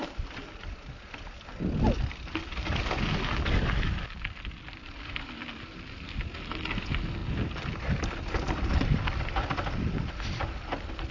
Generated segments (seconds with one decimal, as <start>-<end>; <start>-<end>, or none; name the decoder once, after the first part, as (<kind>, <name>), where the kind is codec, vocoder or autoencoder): none

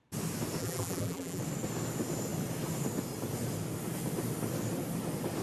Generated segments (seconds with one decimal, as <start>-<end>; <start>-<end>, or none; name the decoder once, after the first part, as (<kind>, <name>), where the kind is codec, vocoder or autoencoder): 0.6-1.4 (vocoder, BigVGAN v2)